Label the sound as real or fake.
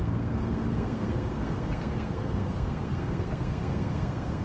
fake